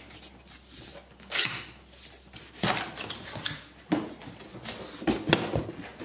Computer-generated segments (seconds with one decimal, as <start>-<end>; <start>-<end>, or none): none